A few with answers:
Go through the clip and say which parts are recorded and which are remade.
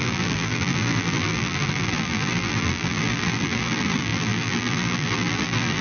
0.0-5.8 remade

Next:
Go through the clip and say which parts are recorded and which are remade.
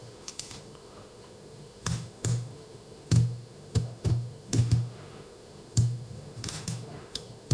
0.0-7.5 remade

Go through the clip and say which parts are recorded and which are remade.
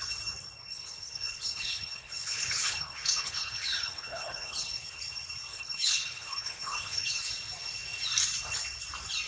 0.0-0.7 recorded; 0.7-5.0 remade; 5.0-5.5 recorded; 5.5-7.3 remade; 7.3-9.3 recorded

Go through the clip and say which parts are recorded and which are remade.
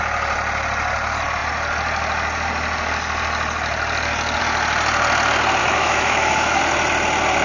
0.0-5.6 recorded; 5.6-6.6 remade; 6.6-7.4 recorded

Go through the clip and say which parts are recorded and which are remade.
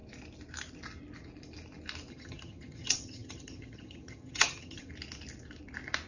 0.0-2.1 recorded; 2.1-4.9 remade; 4.9-6.1 recorded